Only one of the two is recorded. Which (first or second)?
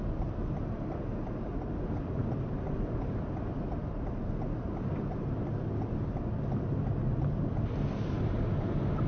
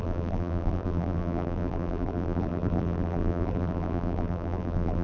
first